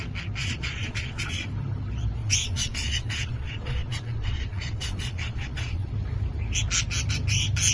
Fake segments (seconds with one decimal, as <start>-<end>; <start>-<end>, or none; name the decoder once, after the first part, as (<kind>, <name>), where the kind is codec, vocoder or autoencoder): 0.4-1.4 (vocoder, Vocos); 2.2-5.9